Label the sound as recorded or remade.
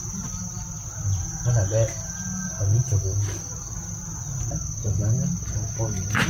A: recorded